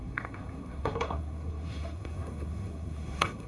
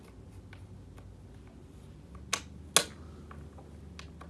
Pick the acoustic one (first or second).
second